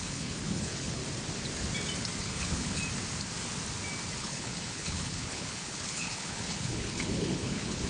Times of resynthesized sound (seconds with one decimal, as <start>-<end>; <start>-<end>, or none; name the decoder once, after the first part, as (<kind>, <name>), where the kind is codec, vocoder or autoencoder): 0.0-1.0 (codec, HILCodec); 2.2-2.8; 4.2-7.9